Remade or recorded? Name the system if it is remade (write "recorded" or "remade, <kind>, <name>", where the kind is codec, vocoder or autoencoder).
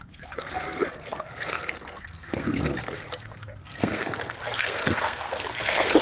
remade, codec, SNAC